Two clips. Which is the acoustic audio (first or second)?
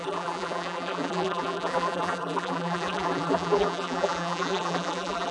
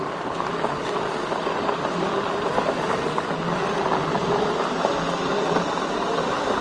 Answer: second